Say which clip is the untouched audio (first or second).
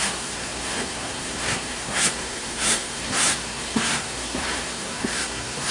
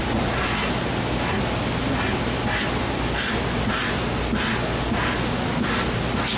second